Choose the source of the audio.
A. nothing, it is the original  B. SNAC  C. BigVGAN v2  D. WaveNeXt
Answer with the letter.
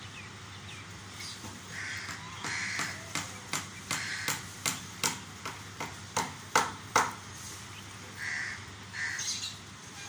A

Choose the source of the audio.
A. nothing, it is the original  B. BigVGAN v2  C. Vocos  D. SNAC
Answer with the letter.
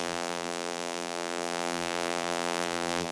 B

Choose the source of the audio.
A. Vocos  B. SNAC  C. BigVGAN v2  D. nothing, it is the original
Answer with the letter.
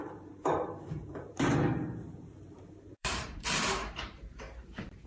C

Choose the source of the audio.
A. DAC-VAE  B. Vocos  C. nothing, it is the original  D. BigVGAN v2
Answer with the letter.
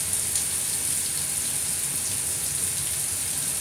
C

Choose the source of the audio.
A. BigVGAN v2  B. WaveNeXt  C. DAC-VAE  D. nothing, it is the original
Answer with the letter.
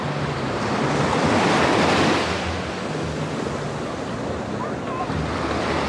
D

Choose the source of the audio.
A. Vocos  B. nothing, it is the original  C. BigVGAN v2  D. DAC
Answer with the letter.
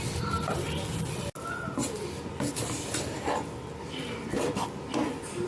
B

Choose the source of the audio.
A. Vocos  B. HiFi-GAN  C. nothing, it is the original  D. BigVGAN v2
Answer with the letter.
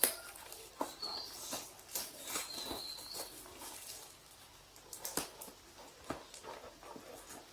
C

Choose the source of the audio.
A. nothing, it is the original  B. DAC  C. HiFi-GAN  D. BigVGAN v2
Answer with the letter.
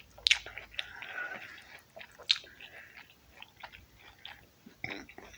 A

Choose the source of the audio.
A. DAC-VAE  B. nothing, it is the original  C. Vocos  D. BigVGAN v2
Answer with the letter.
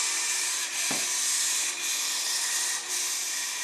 D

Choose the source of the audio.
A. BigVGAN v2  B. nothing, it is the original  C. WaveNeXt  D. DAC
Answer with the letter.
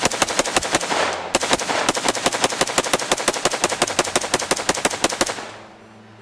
B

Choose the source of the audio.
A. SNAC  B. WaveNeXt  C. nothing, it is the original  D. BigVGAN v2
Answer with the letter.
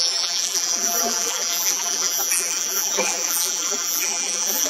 D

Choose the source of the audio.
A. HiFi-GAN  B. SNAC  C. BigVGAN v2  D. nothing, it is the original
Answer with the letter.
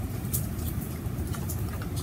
C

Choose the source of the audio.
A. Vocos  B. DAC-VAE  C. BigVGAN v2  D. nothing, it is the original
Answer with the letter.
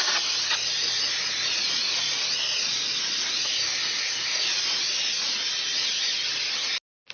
D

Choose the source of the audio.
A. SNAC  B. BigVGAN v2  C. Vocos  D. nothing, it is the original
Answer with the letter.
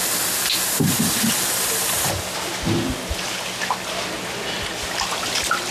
D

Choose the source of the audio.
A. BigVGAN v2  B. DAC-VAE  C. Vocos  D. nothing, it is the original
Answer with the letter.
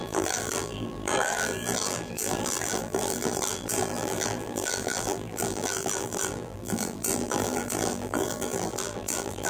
A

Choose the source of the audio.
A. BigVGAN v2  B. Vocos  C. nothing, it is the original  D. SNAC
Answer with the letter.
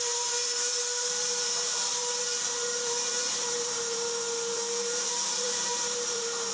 A